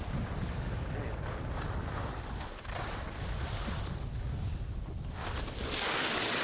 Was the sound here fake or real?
real